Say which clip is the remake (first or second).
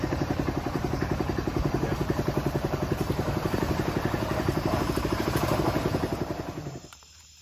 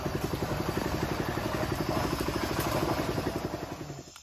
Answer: first